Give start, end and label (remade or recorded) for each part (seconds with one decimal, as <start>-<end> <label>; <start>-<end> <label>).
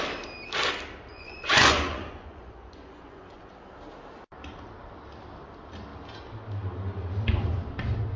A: 0.0-1.1 recorded; 1.1-3.5 remade; 3.5-8.2 recorded